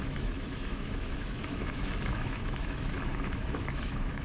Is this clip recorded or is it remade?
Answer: remade